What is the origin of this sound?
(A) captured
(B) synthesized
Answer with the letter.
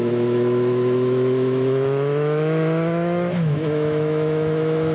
B